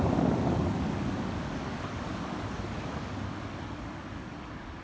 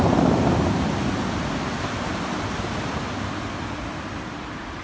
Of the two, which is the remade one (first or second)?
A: first